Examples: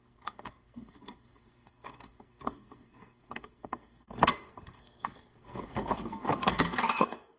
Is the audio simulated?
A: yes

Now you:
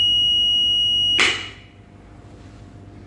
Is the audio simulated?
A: no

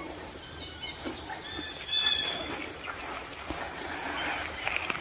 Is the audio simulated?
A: no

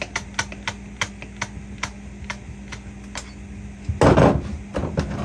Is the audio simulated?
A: no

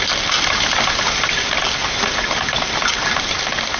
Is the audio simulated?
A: no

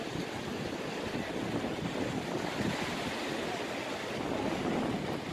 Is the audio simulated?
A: no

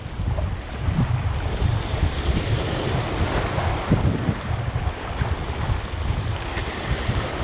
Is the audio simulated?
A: no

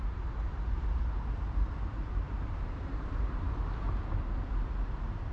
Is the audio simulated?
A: yes